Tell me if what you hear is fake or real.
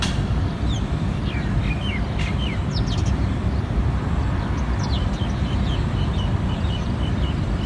fake